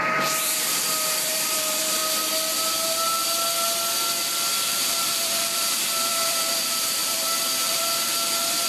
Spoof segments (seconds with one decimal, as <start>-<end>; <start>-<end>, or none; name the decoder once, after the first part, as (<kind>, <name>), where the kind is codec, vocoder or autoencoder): 0.0-2.0 (vocoder, BigVGAN v2); 4.6-8.7